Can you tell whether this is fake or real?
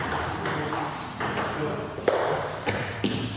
real